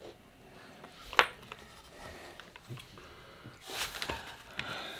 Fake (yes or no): no